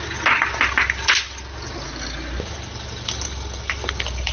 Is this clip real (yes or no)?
yes